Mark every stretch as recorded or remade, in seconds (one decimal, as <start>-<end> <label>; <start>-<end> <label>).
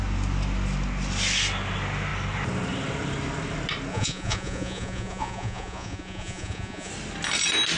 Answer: 0.0-3.9 recorded; 3.9-6.9 remade; 6.9-7.8 recorded